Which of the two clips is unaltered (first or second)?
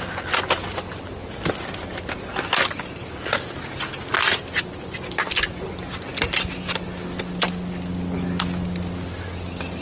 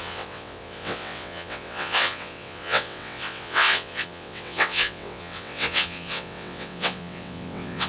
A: first